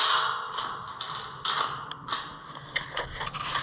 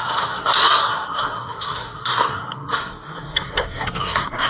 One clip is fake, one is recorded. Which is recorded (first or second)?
first